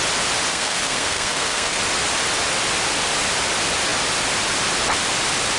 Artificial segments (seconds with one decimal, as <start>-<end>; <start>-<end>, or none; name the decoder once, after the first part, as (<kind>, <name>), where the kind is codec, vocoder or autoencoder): 0.5-1.8 (codec, SNAC)